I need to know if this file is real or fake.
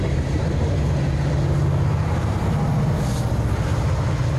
real